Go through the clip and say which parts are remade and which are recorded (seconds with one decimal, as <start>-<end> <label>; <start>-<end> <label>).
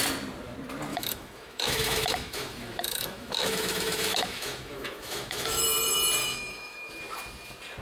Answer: 0.0-0.9 recorded; 0.9-5.6 remade; 5.6-6.2 recorded; 6.2-6.9 remade; 6.9-7.8 recorded